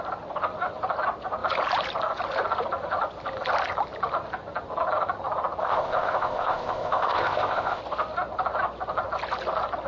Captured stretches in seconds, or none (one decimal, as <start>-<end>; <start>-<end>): 0.0-5.6; 7.8-9.9

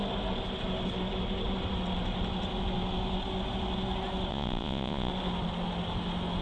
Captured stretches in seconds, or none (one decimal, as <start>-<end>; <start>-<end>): 0.0-4.3; 5.1-6.4

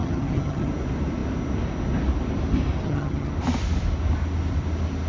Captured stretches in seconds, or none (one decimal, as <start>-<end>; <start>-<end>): 0.7-2.8; 3.3-5.1

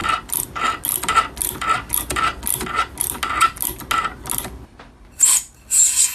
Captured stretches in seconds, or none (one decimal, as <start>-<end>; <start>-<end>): 0.0-6.1

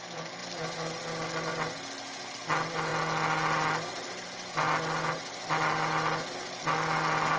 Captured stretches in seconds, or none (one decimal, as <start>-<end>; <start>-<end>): 0.0-7.4